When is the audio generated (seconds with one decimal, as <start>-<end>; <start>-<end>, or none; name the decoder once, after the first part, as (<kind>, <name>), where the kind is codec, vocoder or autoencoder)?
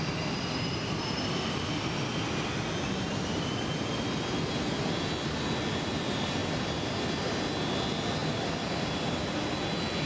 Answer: 6.4-7.0 (vocoder, BigVGAN v2); 8.2-8.9